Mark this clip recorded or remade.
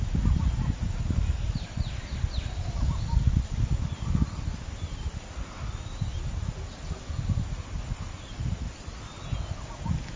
recorded